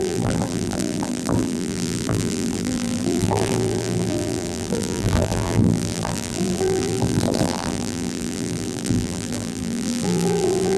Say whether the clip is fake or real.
fake